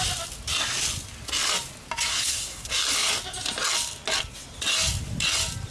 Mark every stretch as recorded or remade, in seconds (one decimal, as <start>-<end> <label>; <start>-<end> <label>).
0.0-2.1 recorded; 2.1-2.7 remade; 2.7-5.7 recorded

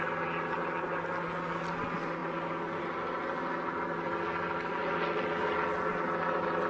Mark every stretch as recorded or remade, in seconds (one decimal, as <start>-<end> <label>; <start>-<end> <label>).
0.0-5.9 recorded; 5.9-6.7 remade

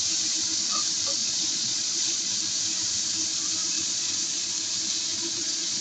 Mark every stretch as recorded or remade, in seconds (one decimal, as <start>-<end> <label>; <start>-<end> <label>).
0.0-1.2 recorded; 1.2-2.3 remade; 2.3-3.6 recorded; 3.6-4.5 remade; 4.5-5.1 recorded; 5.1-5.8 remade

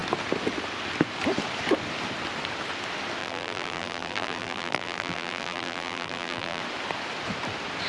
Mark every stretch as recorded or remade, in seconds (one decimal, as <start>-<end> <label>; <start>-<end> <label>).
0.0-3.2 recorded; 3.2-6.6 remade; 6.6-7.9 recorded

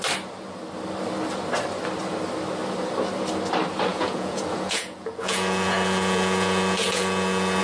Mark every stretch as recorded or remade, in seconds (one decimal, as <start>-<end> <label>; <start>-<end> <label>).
0.0-3.9 recorded; 3.9-7.6 remade